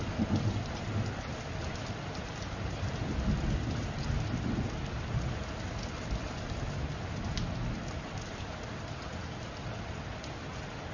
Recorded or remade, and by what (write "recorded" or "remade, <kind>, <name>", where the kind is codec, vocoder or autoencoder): recorded